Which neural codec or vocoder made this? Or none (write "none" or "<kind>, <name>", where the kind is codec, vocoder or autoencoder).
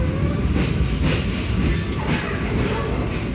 none